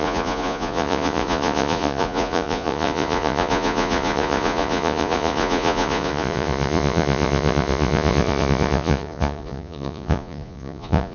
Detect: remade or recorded remade